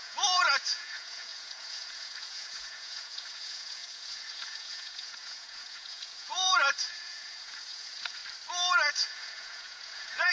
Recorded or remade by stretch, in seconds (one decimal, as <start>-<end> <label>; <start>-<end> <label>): 0.0-8.2 remade; 8.2-8.9 recorded; 8.9-10.3 remade